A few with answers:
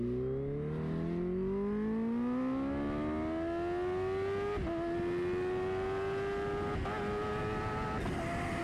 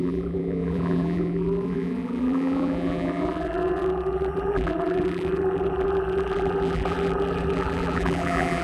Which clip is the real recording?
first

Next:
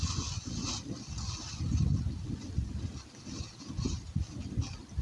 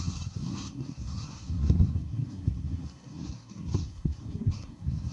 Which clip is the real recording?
first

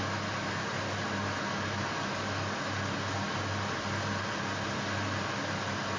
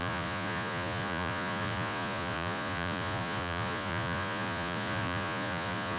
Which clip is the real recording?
first